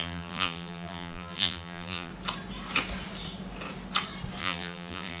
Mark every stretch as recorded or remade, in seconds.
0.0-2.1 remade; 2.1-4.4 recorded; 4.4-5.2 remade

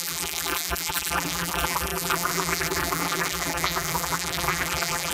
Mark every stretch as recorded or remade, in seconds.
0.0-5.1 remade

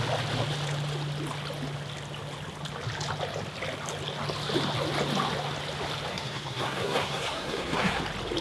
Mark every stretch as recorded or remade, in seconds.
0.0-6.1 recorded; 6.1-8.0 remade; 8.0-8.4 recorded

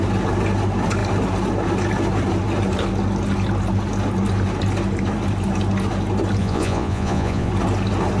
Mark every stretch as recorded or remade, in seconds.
0.0-6.4 recorded; 6.4-7.5 remade; 7.5-8.2 recorded